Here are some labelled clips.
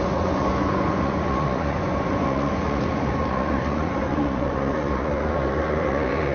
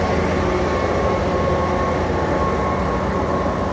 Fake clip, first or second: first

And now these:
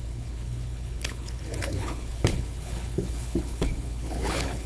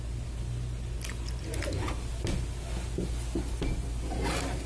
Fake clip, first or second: first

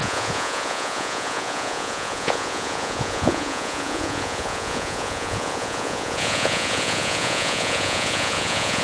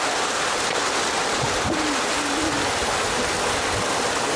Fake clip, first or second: first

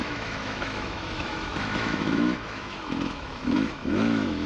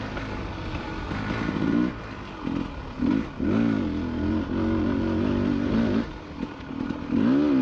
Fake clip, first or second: first